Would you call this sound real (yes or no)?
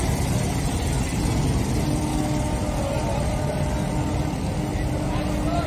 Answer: yes